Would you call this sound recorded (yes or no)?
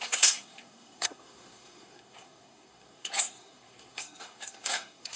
no